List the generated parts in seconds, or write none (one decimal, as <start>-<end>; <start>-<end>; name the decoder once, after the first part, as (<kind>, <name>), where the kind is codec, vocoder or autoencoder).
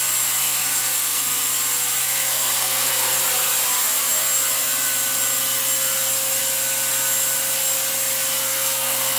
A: 0.4-1.5 (codec, SNAC); 2.0-3.2; 8.5-9.2